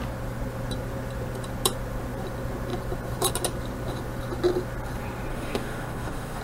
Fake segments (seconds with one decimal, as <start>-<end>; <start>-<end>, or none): 5.3-6.4